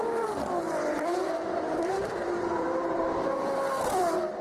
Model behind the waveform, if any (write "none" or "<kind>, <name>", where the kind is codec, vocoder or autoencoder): vocoder, BigVGAN v2